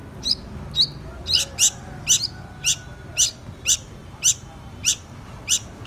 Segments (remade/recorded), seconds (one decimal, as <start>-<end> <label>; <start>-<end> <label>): 0.0-3.5 recorded; 3.5-5.9 remade